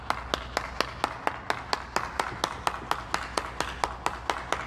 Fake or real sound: real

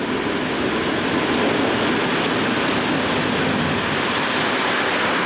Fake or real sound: real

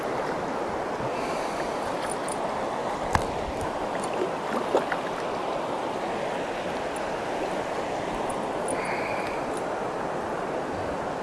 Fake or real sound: real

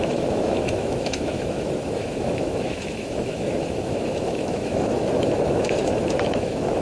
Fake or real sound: fake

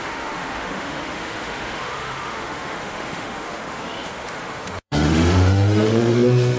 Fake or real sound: fake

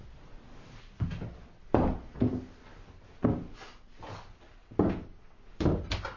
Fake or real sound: real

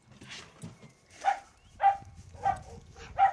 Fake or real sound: real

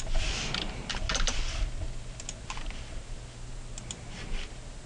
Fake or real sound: real